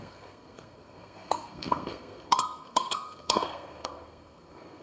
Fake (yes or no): yes